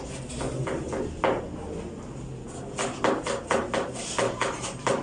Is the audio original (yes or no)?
yes